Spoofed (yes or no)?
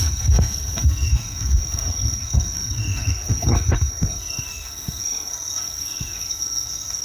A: yes